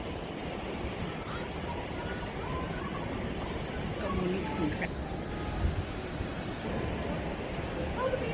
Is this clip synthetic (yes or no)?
no